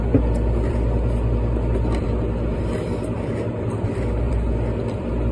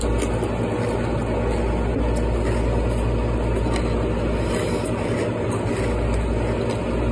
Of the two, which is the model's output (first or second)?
first